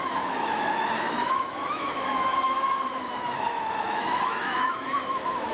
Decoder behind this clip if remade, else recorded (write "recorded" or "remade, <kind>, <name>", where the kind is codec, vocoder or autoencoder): remade, autoencoder, DAC-VAE